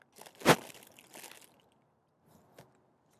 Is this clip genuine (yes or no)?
yes